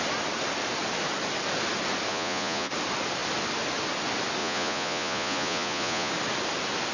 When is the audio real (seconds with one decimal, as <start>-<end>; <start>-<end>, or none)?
0.0-2.1; 2.7-4.4; 6.1-6.9